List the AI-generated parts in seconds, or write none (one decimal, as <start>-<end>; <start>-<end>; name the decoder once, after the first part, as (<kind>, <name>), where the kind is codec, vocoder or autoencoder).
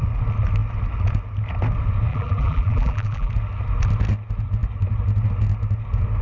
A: 2.1-3.3 (vocoder, BigVGAN v2)